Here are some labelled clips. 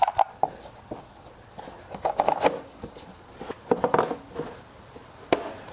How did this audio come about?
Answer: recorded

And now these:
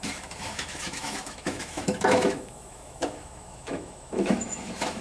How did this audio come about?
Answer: remade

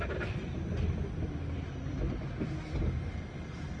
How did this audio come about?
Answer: recorded